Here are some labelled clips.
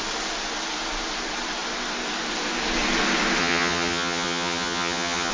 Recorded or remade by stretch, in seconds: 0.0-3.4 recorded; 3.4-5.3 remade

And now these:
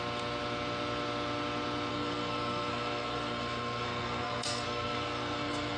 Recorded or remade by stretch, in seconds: 0.0-1.9 recorded; 1.9-5.8 remade

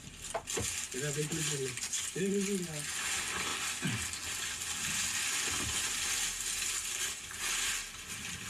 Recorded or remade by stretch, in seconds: 0.0-8.5 recorded

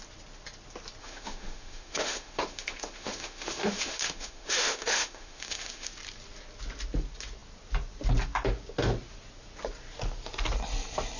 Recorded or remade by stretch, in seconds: 0.0-1.0 recorded; 1.0-5.9 remade; 5.9-11.2 recorded

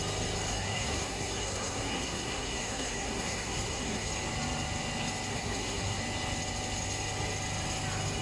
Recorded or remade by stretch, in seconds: 0.0-0.5 recorded; 0.5-4.1 remade; 4.1-5.3 recorded; 5.3-6.0 remade; 6.0-8.2 recorded

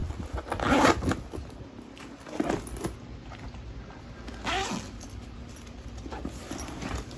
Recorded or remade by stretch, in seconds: 0.0-7.2 recorded